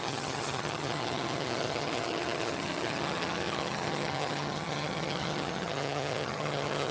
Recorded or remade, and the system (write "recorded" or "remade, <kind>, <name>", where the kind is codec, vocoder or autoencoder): remade, vocoder, HiFi-GAN